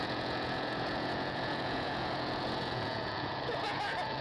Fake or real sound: fake